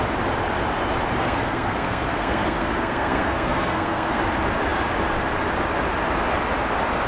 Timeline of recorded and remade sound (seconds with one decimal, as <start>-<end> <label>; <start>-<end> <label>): 0.0-1.2 recorded; 1.2-4.2 remade; 4.2-7.1 recorded